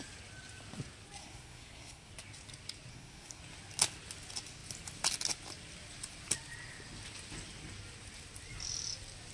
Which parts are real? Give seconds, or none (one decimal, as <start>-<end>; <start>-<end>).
0.0-1.2; 2.1-2.9; 3.4-9.3